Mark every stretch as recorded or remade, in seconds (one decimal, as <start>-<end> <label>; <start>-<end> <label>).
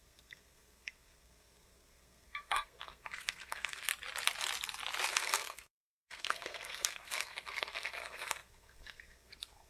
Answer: 0.0-3.9 remade; 3.9-5.1 recorded; 5.1-9.7 remade